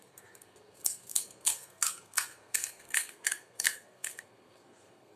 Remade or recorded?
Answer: remade